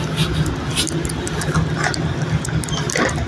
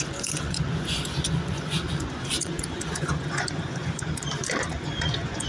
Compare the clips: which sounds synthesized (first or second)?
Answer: second